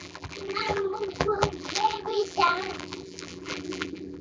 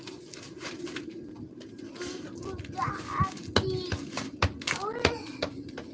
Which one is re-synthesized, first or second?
first